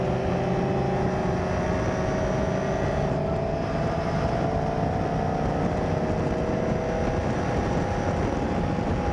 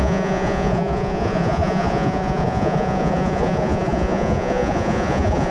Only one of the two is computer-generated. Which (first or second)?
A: second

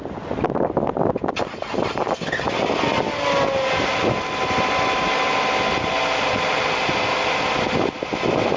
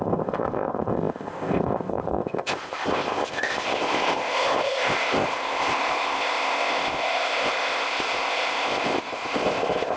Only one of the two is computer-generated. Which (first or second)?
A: second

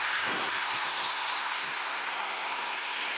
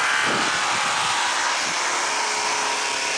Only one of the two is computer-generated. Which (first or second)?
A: first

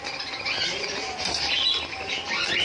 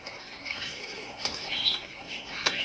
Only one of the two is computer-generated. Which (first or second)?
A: second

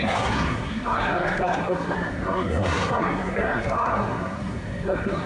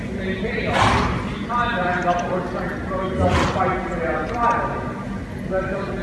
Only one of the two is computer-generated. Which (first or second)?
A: first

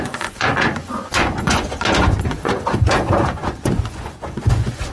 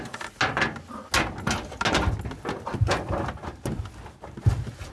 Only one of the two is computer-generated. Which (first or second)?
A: first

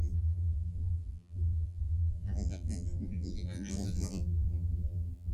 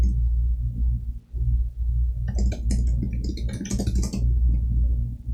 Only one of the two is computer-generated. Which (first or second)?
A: first